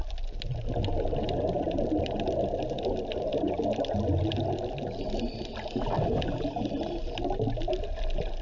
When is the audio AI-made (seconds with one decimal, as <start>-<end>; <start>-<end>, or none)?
none